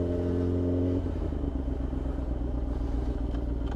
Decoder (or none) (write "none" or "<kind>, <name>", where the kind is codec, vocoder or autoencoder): none